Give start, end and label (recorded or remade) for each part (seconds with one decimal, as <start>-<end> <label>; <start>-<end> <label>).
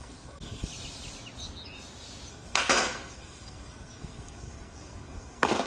0.0-0.7 remade; 0.7-2.3 recorded; 2.3-5.7 remade